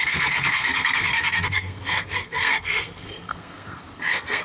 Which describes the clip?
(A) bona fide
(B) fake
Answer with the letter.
B